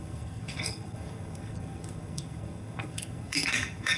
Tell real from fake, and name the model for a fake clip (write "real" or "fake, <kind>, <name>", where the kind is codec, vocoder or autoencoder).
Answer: fake, codec, SNAC